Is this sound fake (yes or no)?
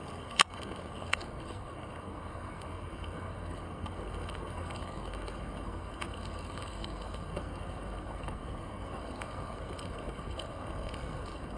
yes